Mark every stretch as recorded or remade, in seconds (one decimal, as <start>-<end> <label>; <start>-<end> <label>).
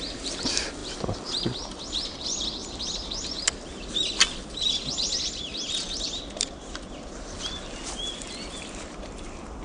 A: 0.0-9.6 recorded